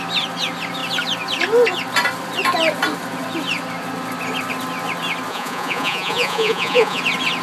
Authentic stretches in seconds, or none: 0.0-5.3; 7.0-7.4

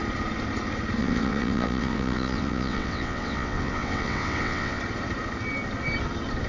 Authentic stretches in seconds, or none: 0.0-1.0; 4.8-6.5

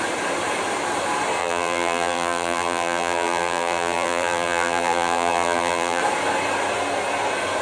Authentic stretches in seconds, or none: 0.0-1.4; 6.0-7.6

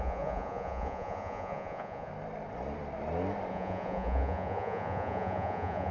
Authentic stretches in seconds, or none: 2.1-3.5

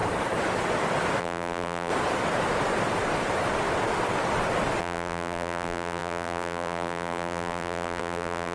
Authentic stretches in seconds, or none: 0.0-1.2; 1.9-4.8

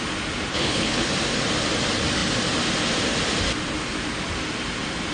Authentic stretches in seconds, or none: 0.0-0.5; 1.1-5.1

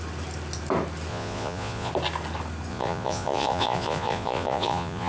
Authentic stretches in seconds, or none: 0.0-1.1; 1.9-2.7